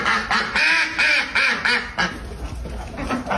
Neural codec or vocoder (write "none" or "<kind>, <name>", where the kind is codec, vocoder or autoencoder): none